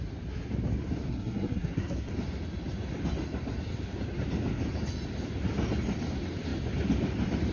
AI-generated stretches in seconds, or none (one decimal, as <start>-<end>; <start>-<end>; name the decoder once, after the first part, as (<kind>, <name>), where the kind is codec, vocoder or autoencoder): 1.1-2.1 (codec, SNAC)